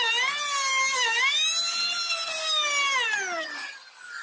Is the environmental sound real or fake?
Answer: real